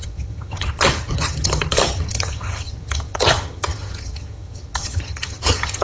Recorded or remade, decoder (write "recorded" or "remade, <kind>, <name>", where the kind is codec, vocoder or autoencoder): remade, vocoder, HiFi-GAN